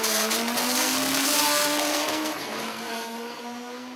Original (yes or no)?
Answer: no